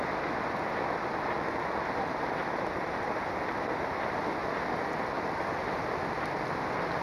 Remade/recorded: recorded